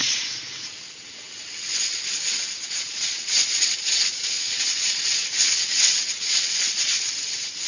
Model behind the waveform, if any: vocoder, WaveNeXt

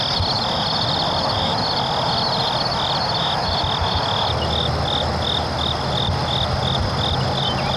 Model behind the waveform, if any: none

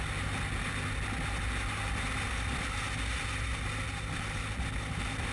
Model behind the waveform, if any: none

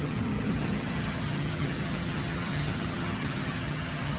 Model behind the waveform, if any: vocoder, HiFi-GAN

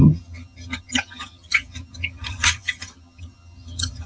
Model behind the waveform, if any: vocoder, HiFi-GAN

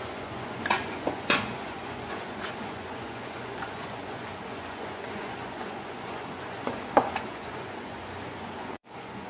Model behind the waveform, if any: vocoder, Vocos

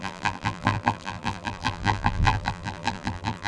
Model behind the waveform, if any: vocoder, BigVGAN v2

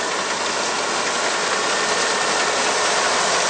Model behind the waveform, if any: none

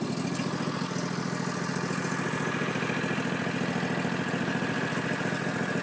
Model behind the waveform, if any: none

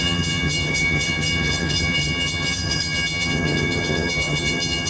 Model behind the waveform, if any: vocoder, HiFi-GAN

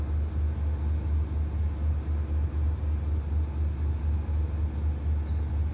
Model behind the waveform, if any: none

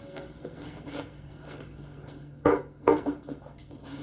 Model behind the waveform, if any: codec, SNAC